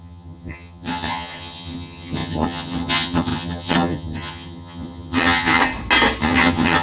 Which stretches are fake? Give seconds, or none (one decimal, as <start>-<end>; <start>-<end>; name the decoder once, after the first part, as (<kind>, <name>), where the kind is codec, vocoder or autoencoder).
0.0-5.6 (vocoder, HiFi-GAN); 6.2-6.8